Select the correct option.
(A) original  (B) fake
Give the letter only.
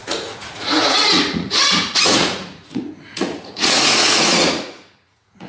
B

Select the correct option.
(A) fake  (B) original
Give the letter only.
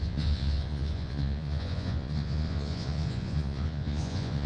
A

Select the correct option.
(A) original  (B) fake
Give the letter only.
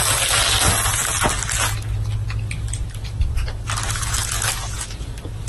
A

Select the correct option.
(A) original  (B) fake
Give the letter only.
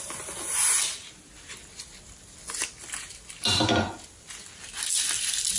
A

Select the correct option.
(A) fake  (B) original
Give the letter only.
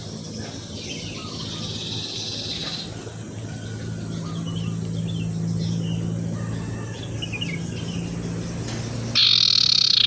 B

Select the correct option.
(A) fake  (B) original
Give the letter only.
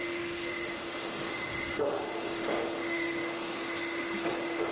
A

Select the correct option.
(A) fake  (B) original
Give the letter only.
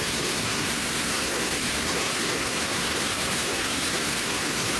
A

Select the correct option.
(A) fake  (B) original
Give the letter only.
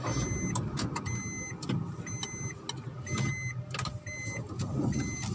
B